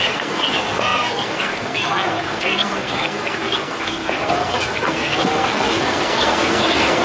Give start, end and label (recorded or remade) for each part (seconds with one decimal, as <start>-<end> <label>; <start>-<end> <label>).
0.0-7.0 remade